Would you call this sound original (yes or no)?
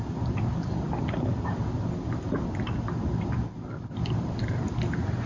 yes